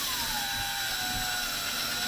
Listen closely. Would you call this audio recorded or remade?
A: recorded